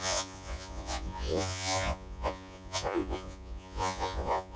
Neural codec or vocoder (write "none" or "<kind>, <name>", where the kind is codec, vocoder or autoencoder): vocoder, Vocos